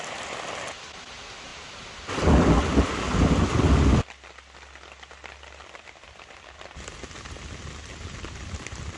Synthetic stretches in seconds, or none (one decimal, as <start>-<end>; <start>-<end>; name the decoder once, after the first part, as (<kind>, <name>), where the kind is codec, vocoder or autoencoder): none